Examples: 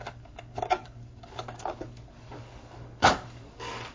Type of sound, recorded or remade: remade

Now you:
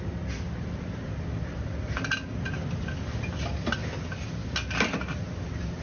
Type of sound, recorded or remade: recorded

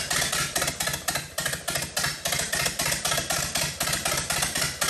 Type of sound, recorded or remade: recorded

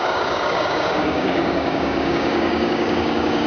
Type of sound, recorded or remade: remade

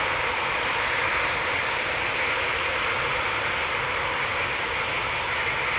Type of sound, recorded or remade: recorded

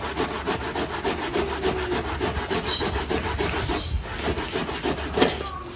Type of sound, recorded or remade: recorded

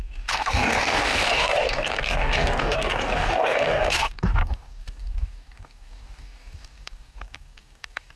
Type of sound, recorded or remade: remade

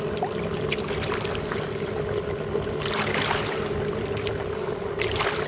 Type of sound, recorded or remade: recorded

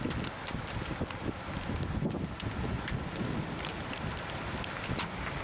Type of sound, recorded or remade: recorded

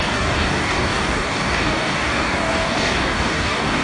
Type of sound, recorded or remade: remade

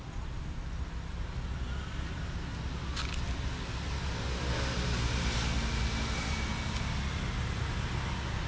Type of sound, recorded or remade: recorded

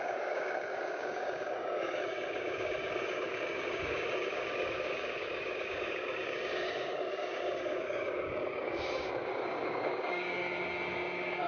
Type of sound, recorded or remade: remade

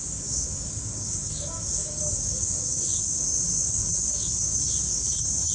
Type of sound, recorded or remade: remade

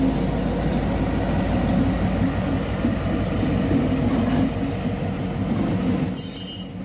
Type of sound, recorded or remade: recorded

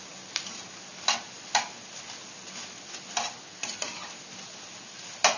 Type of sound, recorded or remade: recorded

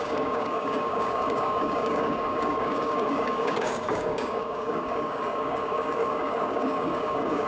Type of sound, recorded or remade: remade